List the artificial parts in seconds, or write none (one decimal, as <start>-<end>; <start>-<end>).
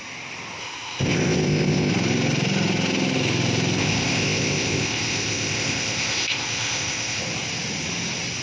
0.6-1.9; 3.8-7.2